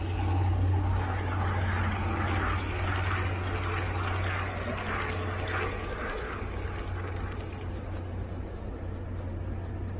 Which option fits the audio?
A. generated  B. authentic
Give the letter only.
B